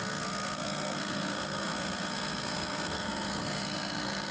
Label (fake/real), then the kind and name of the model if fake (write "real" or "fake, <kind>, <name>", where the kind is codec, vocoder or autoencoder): fake, codec, SNAC